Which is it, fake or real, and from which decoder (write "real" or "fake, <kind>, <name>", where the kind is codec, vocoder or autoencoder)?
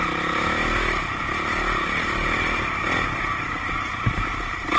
real